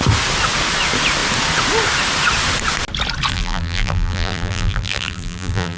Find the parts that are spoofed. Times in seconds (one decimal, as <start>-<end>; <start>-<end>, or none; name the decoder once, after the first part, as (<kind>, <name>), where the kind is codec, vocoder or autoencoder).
3.3-5.8 (vocoder, BigVGAN v2)